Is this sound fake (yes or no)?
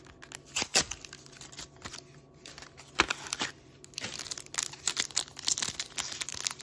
no